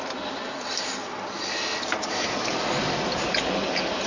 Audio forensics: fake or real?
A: fake